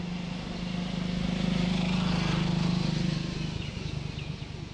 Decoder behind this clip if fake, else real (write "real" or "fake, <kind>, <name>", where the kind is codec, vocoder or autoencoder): real